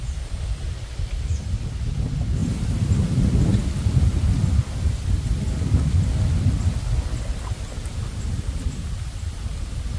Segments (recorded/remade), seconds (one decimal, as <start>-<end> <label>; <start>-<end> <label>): 0.0-2.4 recorded; 2.4-6.6 remade; 6.6-10.0 recorded